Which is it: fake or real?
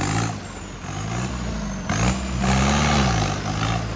real